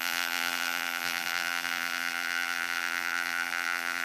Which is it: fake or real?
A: fake